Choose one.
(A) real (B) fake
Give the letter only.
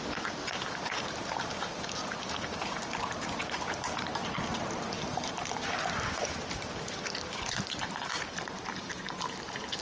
B